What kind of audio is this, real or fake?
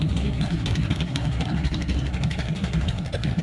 fake